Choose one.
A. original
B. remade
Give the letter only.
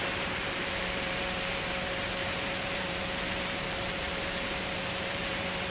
B